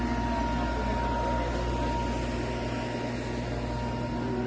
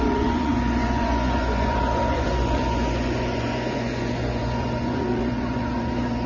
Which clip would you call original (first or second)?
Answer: first